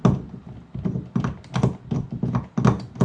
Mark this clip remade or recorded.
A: recorded